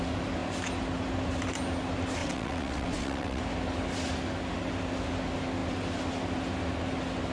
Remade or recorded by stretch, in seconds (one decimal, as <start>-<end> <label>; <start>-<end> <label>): 0.0-2.2 recorded; 2.2-3.4 remade; 3.4-7.3 recorded